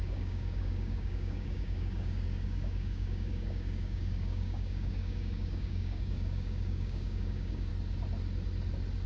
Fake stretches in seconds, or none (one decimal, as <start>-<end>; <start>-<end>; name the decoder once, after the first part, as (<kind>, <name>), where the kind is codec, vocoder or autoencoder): 0.0-7.7 (codec, DAC)